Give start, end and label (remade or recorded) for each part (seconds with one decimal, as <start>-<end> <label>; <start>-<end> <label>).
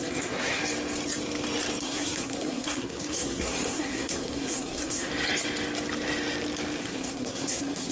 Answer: 0.0-0.6 remade; 0.6-1.8 recorded; 1.8-5.1 remade; 5.1-6.8 recorded; 6.8-7.9 remade